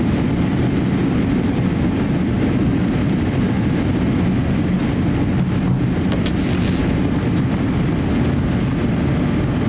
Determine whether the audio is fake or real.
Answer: real